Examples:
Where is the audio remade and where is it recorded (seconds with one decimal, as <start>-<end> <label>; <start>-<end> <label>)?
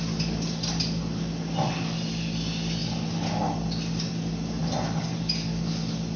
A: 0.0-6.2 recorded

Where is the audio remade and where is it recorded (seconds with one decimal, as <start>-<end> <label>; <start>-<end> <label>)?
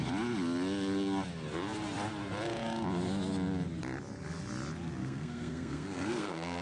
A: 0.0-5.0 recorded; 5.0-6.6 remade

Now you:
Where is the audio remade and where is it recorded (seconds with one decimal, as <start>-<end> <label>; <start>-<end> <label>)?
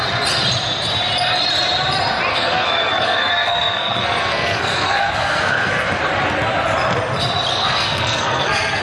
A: 0.0-2.3 recorded; 2.3-6.0 remade; 6.0-7.5 recorded; 7.5-8.8 remade